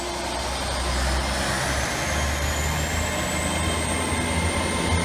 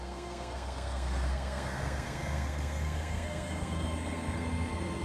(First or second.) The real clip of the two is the first